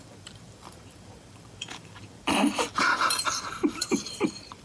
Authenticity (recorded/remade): remade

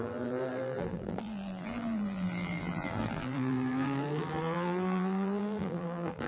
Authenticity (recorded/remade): remade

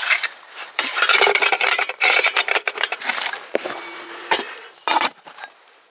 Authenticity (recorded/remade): remade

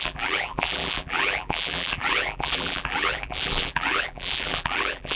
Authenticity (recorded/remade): remade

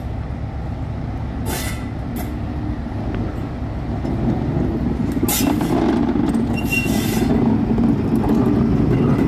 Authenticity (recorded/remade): recorded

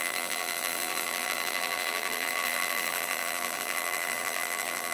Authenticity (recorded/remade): remade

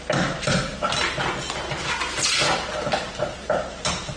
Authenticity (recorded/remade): recorded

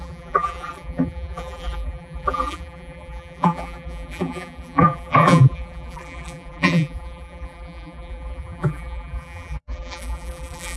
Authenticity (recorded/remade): remade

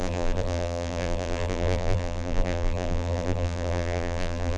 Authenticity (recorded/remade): remade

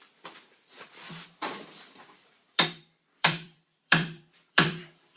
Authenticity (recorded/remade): remade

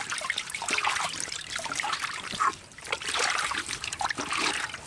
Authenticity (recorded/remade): remade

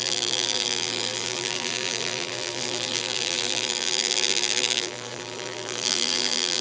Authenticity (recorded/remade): remade